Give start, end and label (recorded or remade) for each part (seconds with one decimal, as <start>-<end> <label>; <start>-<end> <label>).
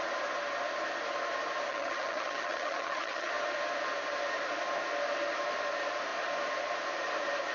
0.0-1.7 recorded; 1.7-3.3 remade; 3.3-7.5 recorded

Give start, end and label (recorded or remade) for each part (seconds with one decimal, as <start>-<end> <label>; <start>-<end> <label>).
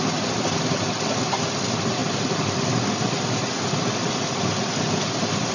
0.0-5.5 recorded